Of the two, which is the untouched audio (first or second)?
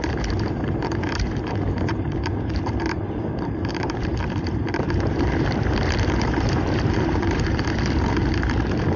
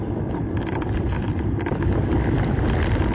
second